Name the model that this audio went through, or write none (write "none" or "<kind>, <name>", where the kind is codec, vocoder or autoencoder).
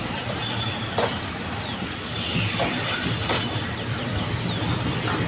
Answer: none